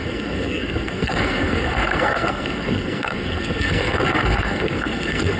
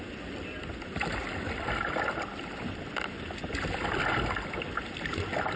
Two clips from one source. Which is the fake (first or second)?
first